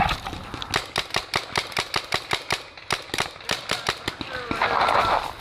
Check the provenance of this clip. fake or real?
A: real